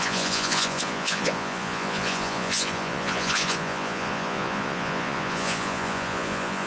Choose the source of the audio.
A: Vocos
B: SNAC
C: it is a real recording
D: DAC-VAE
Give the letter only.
A